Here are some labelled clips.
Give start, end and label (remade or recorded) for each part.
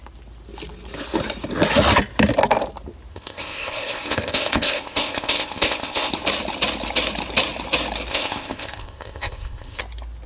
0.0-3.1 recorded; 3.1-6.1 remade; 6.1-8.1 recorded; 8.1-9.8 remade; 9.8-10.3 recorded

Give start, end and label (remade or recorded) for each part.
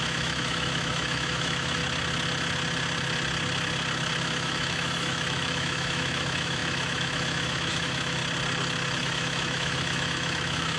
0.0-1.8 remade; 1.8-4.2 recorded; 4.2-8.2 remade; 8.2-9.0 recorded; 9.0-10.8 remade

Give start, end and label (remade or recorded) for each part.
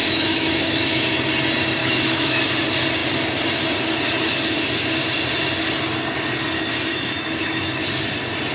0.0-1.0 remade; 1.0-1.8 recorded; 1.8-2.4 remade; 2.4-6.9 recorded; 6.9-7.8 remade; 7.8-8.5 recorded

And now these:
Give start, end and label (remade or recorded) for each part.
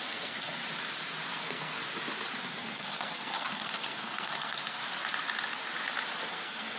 0.0-0.6 remade; 0.6-1.3 recorded; 1.3-1.8 remade; 1.8-2.6 recorded; 2.6-4.8 remade; 4.8-6.3 recorded; 6.3-6.8 remade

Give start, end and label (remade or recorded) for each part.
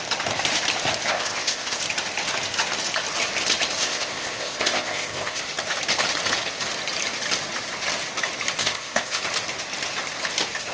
0.0-1.1 recorded; 1.1-1.8 remade; 1.8-3.8 recorded; 3.8-5.4 remade; 5.4-8.6 recorded; 8.6-9.2 remade; 9.2-10.7 recorded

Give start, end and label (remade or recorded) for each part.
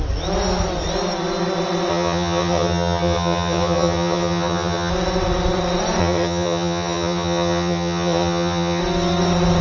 0.0-1.9 recorded; 1.9-4.9 remade; 4.9-6.0 recorded; 6.0-8.8 remade; 8.8-9.6 recorded